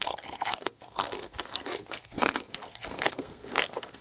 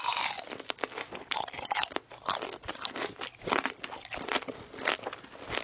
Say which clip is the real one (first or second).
second